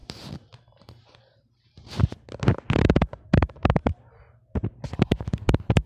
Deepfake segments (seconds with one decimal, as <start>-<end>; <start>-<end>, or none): 0.0-1.2